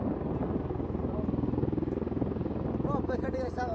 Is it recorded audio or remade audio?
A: recorded